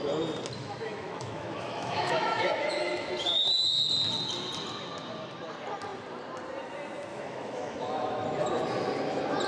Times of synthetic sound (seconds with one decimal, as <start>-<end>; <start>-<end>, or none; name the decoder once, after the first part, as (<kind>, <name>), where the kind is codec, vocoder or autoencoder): 0.6-3.1 (autoencoder, DAC-VAE); 7.1-8.4